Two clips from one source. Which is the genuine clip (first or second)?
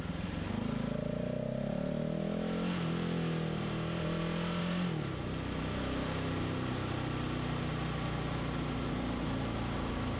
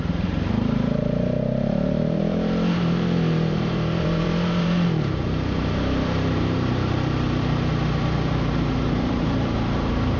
first